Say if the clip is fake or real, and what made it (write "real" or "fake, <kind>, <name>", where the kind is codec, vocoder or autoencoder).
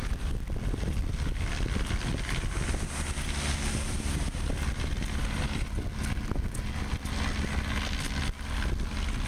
real